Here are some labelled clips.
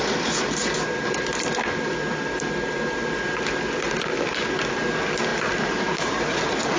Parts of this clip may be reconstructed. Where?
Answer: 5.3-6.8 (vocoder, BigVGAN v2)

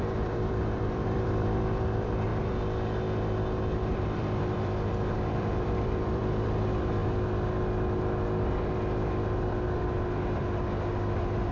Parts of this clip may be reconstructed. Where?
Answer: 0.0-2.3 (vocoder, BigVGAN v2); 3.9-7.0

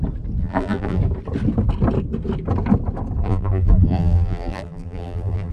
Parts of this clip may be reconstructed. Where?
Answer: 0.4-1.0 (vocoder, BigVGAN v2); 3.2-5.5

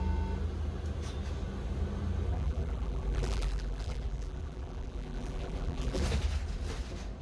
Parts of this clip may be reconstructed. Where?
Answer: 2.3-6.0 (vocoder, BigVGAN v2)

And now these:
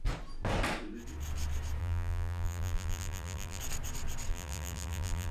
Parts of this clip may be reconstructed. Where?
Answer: 1.8-3.6 (vocoder, BigVGAN v2); 4.3-5.3

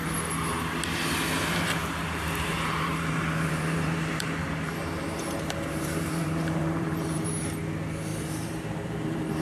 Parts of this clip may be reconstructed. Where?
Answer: 2.5-7.3 (vocoder, BigVGAN v2); 8.1-9.4

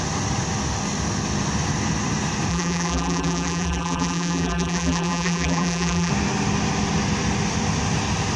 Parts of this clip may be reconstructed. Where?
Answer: 2.5-6.1 (vocoder, BigVGAN v2)